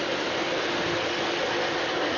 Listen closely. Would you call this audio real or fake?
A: real